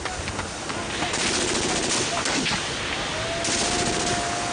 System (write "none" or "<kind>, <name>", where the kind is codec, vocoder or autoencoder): none